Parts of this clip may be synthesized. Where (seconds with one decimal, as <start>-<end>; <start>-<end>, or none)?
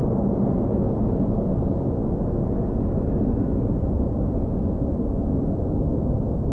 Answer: 3.7-6.5